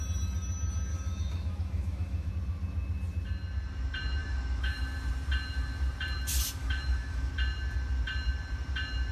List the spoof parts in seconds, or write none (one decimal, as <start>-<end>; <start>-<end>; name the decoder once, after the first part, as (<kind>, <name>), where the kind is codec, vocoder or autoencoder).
0.9-2.3 (autoencoder, DAC-VAE); 4.2-4.8; 6.6-7.3